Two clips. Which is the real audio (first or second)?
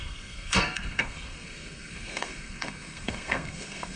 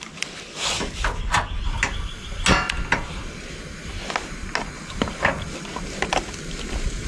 second